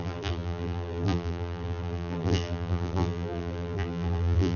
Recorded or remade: remade